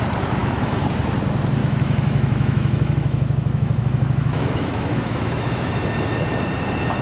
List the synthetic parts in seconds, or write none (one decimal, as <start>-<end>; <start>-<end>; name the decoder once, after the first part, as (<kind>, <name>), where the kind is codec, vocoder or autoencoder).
0.4-0.9 (autoencoder, DAC-VAE); 1.6-5.7

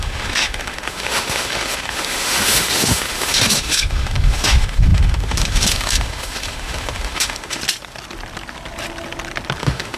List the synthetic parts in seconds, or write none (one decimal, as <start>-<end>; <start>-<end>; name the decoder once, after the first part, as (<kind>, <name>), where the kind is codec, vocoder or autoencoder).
0.0-7.6 (autoencoder, DAC-VAE); 9.6-10.0

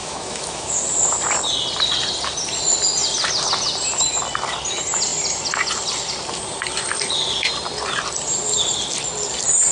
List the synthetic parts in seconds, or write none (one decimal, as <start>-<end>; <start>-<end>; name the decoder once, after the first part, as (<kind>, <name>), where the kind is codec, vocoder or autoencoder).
0.0-0.7 (autoencoder, DAC-VAE)

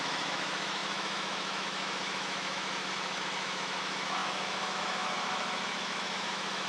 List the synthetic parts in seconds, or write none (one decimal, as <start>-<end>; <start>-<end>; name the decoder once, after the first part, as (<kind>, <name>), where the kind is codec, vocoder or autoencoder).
0.0-6.7 (autoencoder, DAC-VAE)

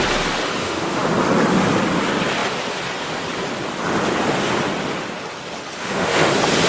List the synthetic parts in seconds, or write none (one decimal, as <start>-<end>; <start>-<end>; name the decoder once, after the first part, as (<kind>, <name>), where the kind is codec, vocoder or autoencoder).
0.6-1.1 (autoencoder, DAC-VAE); 5.8-6.3

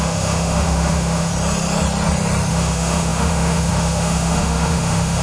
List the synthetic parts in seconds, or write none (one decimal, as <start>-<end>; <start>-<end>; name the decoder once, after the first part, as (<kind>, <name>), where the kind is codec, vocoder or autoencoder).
0.0-1.3 (autoencoder, DAC-VAE); 2.5-5.2

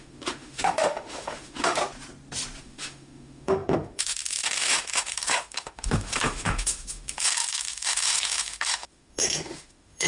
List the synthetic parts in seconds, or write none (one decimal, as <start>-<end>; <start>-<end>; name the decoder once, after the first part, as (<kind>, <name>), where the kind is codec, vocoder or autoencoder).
0.0-1.8 (autoencoder, DAC-VAE); 2.6-10.1